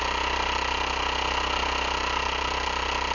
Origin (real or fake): real